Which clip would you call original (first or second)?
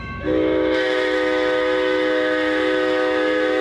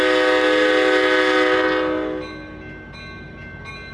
second